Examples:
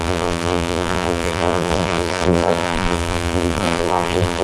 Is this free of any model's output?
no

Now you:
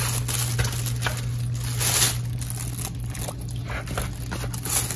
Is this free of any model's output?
yes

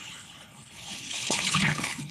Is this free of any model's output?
no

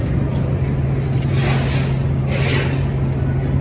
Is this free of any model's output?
yes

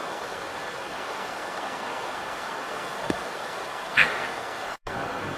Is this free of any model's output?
no